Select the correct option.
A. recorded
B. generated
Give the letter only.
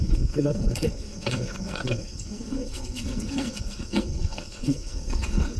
B